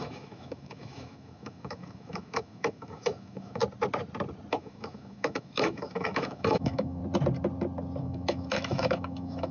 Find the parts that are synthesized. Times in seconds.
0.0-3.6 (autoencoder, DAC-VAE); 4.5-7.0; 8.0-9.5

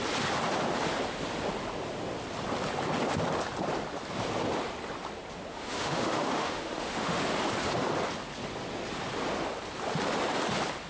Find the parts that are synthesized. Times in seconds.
5.5-7.2 (autoencoder, DAC-VAE)

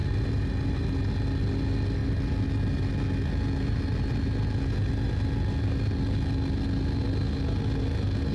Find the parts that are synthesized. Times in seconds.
none

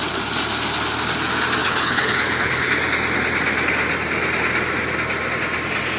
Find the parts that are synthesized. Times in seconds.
1.6-2.7 (codec, HILCodec)

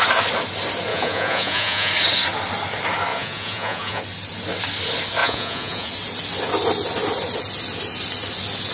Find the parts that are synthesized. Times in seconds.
0.9-1.9 (vocoder, Vocos); 3.1-4.0; 5.2-5.9

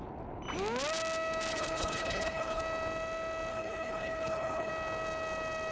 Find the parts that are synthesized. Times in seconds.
1.5-2.6 (codec, HILCodec); 3.5-4.7